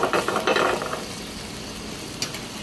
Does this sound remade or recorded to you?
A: recorded